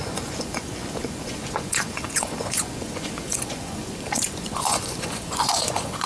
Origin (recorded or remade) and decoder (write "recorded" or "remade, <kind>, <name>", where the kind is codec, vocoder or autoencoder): remade, vocoder, Vocos